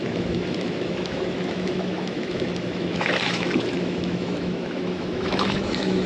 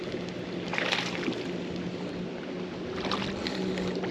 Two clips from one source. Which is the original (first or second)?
second